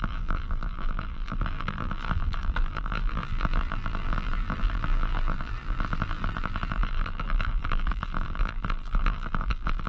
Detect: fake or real fake